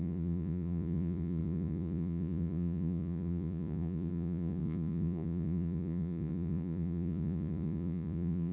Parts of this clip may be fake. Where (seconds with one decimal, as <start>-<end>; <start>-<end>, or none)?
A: 0.0-8.5